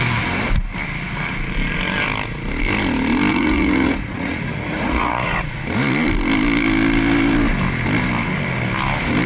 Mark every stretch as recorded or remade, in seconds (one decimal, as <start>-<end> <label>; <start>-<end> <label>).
0.0-3.3 recorded; 3.3-5.6 remade; 5.6-9.3 recorded